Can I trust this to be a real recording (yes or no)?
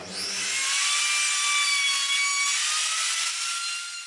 yes